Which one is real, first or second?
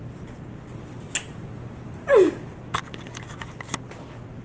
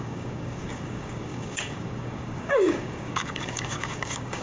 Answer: first